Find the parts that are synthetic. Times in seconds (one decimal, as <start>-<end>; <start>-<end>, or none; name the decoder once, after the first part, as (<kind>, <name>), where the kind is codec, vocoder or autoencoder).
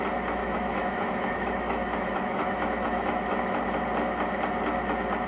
0.4-3.6 (autoencoder, DAC-VAE)